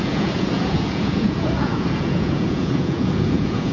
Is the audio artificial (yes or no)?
yes